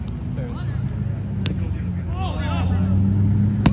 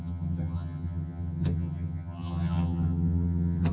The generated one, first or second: second